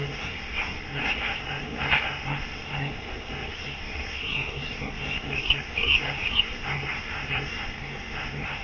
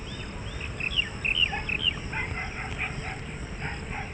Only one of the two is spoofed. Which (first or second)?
first